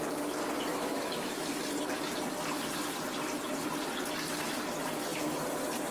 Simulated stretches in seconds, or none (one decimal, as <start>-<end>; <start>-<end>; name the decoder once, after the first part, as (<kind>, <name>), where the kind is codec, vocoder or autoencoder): 0.7-1.4 (autoencoder, DAC-VAE)